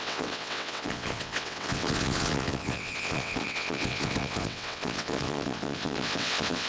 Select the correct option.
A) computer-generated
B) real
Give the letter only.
A